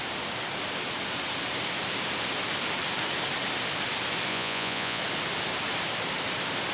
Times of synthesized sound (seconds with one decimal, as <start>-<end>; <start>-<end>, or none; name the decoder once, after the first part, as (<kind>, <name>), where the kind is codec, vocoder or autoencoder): 4.3-5.0 (vocoder, Vocos)